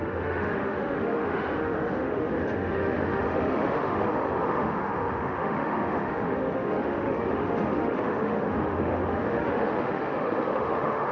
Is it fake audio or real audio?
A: fake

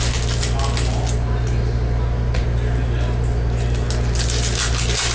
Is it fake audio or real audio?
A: real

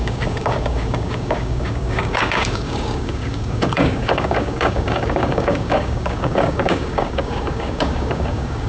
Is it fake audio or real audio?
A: fake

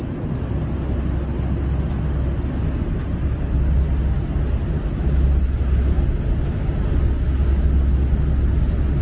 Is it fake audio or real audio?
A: real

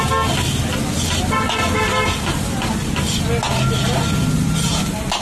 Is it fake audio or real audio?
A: real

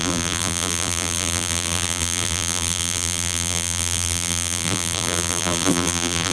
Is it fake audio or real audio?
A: fake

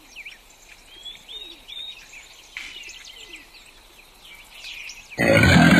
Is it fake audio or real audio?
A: real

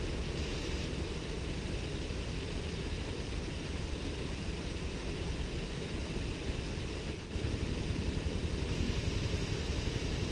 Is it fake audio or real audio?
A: real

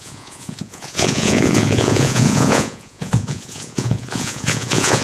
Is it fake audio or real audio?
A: fake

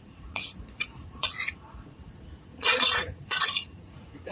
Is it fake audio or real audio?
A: fake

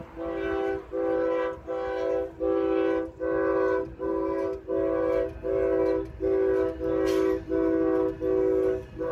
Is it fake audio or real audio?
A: real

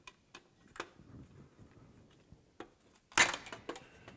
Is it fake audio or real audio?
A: real